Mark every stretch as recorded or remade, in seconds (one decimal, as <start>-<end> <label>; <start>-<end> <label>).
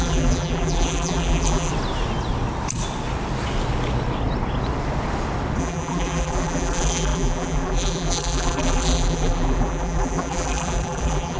0.0-1.7 remade; 1.7-5.6 recorded; 5.6-11.4 remade